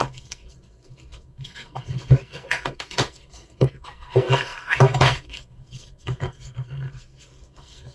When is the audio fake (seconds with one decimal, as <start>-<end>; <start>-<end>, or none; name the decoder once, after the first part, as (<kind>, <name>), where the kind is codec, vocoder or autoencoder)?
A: 0.0-7.9 (codec, SNAC)